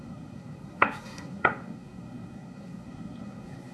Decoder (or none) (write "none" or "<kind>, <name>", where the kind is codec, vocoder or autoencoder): codec, SNAC